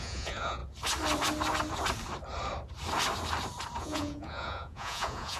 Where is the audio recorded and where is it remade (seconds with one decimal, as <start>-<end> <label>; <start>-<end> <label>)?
0.0-0.6 remade; 0.6-3.8 recorded; 3.8-5.4 remade